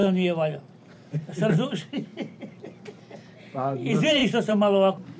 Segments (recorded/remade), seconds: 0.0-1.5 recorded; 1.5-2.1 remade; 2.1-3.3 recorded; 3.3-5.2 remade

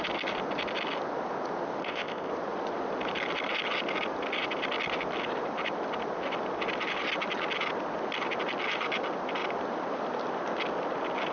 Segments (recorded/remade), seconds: 0.0-1.8 recorded; 1.8-2.3 remade; 2.3-11.3 recorded

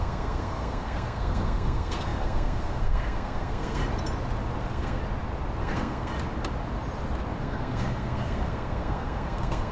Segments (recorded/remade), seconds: 0.0-3.8 remade; 3.8-4.6 recorded; 4.6-5.0 remade; 5.0-5.6 recorded; 5.6-6.1 remade; 6.1-7.4 recorded; 7.4-9.7 remade

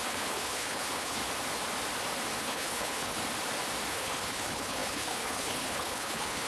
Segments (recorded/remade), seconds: 0.0-1.2 remade; 1.2-2.4 recorded; 2.4-3.2 remade; 3.2-3.9 recorded; 3.9-6.5 remade

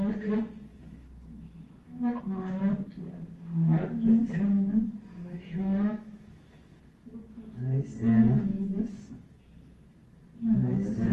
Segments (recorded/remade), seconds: 0.0-0.7 recorded; 0.7-2.2 remade; 2.2-5.1 recorded; 5.1-6.8 remade; 6.8-8.5 recorded; 8.5-9.1 remade; 9.1-11.1 recorded

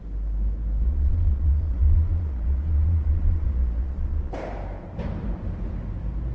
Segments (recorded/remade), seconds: 0.0-0.8 recorded; 0.8-4.3 remade; 4.3-6.3 recorded

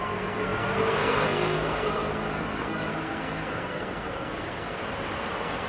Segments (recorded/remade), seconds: 0.0-4.8 remade; 4.8-5.3 recorded; 5.3-5.7 remade

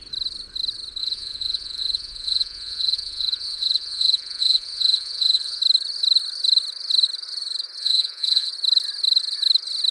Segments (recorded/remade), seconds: 0.0-1.0 recorded; 1.0-5.6 remade; 5.6-7.8 recorded; 7.8-8.5 remade; 8.5-9.9 recorded